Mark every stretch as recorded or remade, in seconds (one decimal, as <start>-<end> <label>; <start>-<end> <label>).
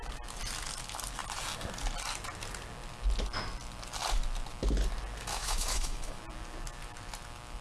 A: 0.0-5.3 recorded; 5.3-6.2 remade; 6.2-7.6 recorded